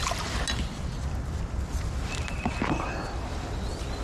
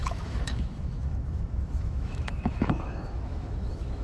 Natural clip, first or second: first